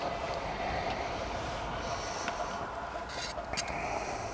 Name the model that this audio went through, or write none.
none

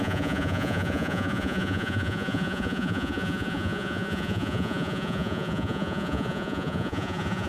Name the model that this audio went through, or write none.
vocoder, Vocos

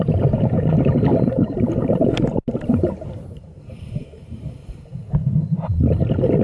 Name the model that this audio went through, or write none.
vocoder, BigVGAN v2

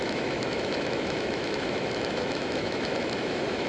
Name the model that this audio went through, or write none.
autoencoder, DAC-VAE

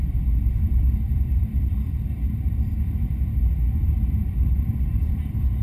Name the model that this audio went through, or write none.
vocoder, BigVGAN v2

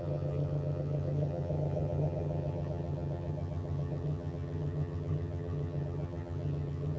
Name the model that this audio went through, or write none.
vocoder, HiFi-GAN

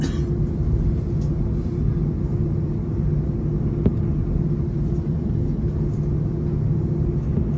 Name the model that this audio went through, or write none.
none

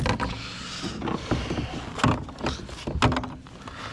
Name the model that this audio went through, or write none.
none